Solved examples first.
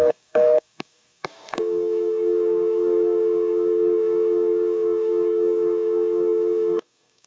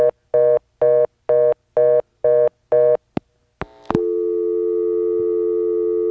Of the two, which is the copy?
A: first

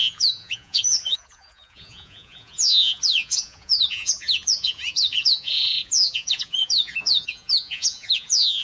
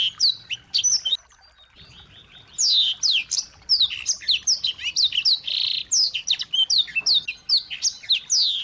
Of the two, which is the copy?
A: first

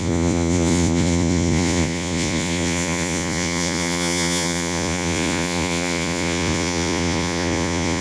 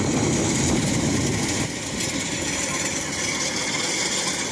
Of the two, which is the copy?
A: first